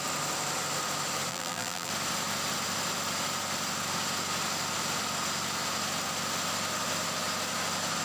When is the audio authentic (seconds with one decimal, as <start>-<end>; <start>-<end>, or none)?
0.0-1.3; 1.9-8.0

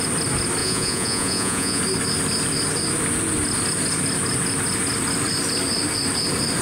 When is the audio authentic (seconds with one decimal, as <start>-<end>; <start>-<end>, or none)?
0.0-0.6; 1.8-6.6

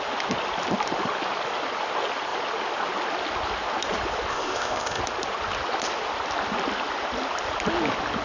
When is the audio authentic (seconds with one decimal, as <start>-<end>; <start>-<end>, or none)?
0.0-4.3; 5.0-8.2

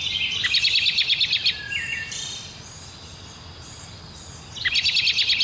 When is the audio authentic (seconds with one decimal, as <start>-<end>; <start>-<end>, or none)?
0.0-5.4

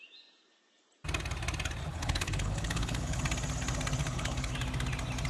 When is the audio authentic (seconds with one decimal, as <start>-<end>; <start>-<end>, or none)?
0.0-1.9; 3.2-4.0; 4.5-5.3